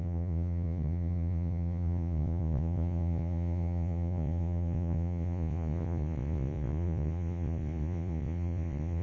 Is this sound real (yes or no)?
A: no